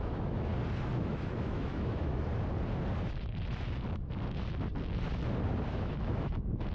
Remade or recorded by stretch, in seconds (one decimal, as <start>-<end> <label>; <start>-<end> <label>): 0.0-0.5 remade; 0.5-1.0 recorded; 1.0-2.3 remade; 2.3-5.7 recorded; 5.7-6.7 remade